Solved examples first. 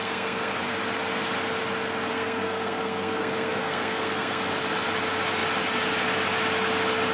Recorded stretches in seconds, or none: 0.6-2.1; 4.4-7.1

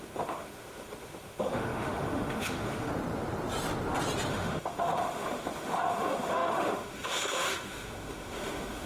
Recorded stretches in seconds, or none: 2.9-4.3

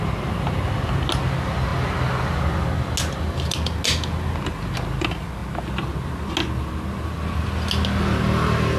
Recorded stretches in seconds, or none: 0.0-8.8

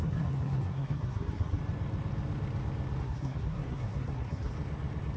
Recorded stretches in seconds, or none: 1.6-3.0; 4.5-5.2